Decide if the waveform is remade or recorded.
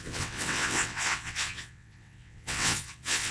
remade